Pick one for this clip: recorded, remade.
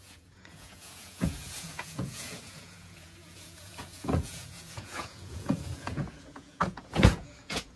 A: remade